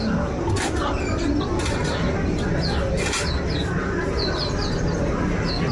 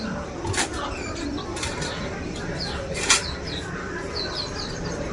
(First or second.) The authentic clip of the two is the first